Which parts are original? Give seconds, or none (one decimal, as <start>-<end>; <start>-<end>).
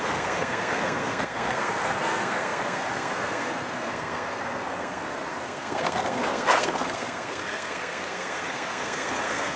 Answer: none